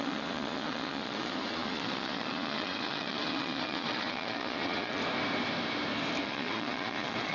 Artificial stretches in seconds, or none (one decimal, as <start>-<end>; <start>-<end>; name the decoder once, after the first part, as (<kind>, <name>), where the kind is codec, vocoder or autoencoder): 0.0-5.0 (vocoder, Vocos); 6.2-7.3